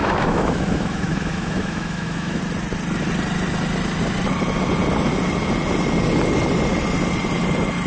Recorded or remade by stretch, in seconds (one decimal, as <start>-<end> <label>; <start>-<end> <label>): 0.0-2.4 remade; 2.4-7.9 recorded

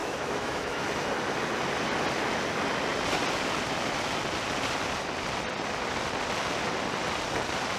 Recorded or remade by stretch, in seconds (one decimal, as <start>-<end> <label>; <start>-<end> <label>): 0.0-0.8 remade; 0.8-7.8 recorded

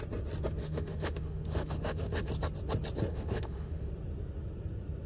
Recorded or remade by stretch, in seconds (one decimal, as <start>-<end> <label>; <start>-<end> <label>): 0.0-0.6 recorded; 0.6-2.3 remade; 2.3-3.1 recorded; 3.1-3.9 remade; 3.9-5.1 recorded